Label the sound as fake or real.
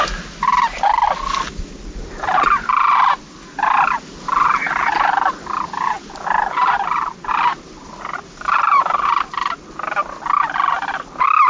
real